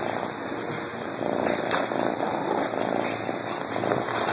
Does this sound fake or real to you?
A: real